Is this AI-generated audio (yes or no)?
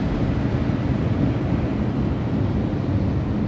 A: no